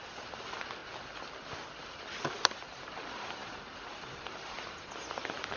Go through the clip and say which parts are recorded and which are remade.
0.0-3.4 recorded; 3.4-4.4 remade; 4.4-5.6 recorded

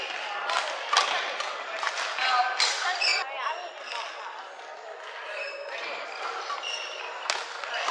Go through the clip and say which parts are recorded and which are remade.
0.0-7.9 recorded

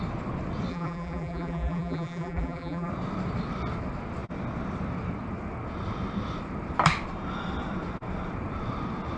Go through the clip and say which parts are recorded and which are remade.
0.0-0.7 recorded; 0.7-2.9 remade; 2.9-9.2 recorded

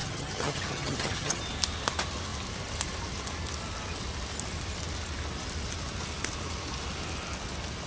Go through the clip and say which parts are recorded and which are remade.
0.0-1.4 remade; 1.4-7.9 recorded

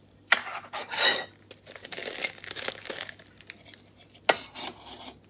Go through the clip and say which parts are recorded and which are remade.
0.0-0.4 recorded; 0.4-1.3 remade; 1.3-1.8 recorded; 1.8-3.2 remade; 3.2-5.3 recorded